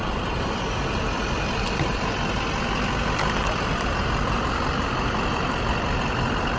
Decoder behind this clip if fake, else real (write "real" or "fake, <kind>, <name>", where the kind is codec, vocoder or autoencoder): real